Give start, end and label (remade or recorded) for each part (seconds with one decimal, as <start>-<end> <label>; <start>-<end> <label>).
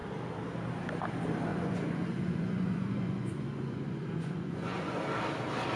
0.0-1.5 recorded; 1.5-5.0 remade; 5.0-5.8 recorded